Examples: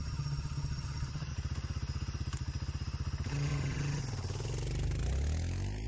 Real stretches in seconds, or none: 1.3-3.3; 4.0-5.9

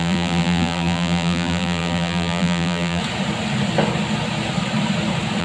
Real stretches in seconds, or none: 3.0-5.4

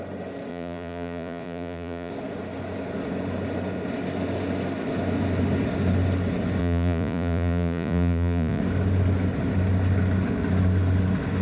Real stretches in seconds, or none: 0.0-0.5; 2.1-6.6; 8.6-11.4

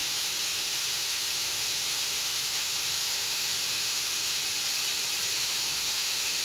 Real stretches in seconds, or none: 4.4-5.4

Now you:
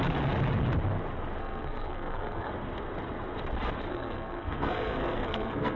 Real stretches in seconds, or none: 0.0-1.4; 2.5-3.9

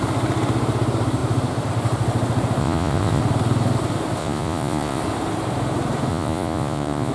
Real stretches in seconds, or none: 0.0-2.6; 3.2-4.2; 5.0-6.1

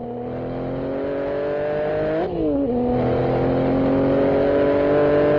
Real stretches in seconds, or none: 0.0-5.4